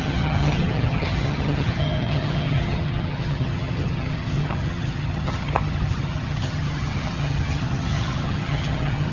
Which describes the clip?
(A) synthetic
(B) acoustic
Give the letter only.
A